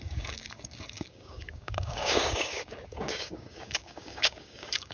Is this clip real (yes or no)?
no